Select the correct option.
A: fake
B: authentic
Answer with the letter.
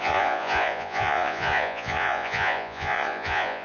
A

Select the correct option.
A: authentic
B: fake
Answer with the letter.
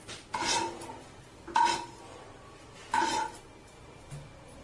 A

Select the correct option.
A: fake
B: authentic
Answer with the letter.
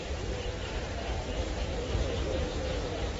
B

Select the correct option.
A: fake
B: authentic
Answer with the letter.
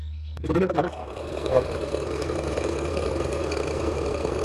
A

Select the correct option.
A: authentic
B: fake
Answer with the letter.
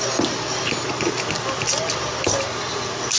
A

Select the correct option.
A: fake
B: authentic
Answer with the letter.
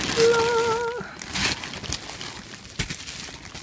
B